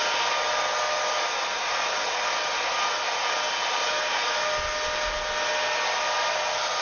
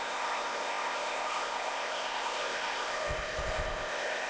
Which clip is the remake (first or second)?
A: second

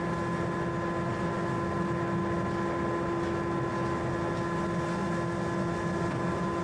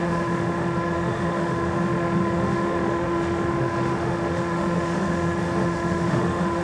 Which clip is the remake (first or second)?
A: second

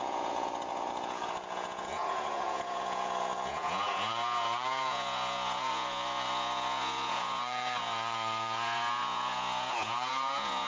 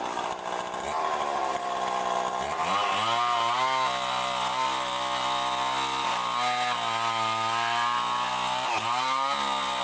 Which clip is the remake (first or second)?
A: first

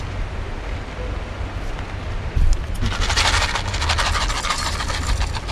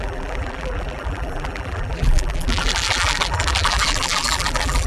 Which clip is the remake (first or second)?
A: second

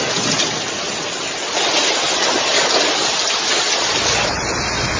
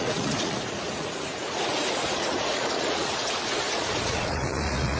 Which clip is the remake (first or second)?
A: second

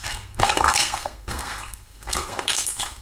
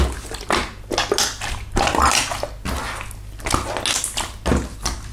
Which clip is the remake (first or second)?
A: first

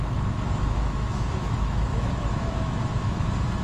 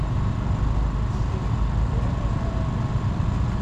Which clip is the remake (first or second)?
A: first